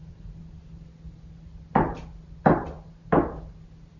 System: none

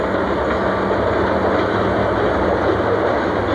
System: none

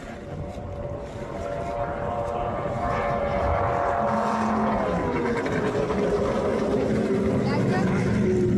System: none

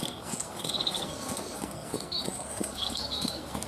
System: codec, SNAC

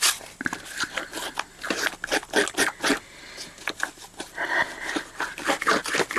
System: none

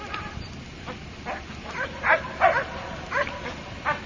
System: none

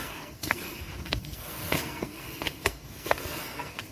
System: codec, SNAC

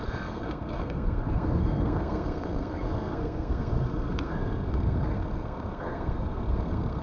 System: codec, SNAC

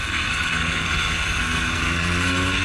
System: codec, SNAC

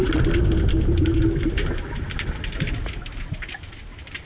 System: none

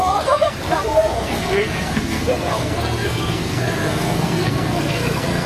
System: codec, SNAC